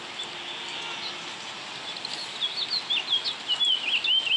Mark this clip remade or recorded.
recorded